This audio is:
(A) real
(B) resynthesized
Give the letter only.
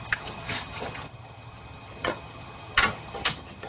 B